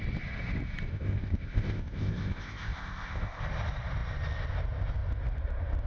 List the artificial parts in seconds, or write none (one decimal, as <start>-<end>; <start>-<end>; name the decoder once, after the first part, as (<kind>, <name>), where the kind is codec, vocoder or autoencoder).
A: 0.9-3.4 (codec, ZipCodec)

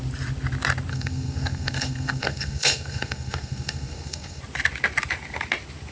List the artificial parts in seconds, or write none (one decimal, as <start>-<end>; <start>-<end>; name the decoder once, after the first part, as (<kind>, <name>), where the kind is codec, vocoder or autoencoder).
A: 0.9-4.4 (codec, SNAC)

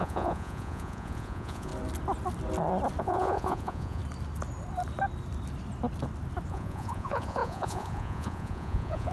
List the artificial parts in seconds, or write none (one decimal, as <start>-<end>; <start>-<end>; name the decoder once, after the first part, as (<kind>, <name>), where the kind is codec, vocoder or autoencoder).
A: 0.0-1.7 (vocoder, Vocos); 3.0-4.0; 6.5-9.1

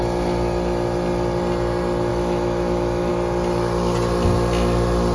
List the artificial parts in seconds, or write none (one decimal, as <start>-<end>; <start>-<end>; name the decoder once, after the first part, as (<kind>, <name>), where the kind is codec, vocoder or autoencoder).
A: 2.1-3.1 (autoencoder, DAC-VAE)

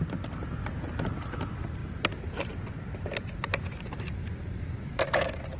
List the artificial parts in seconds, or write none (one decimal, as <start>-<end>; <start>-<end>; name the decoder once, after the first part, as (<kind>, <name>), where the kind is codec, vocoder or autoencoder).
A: 1.8-2.5 (vocoder, BigVGAN v2); 3.5-5.6

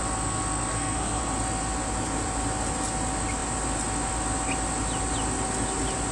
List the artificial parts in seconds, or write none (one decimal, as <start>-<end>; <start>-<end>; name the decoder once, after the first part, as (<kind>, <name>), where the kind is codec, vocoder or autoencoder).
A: 0.7-1.2 (codec, SNAC)